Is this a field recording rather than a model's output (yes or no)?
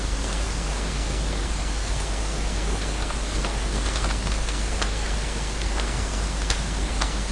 no